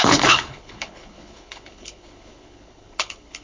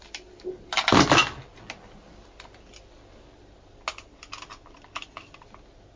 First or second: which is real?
second